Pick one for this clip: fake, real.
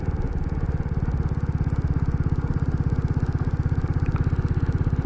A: real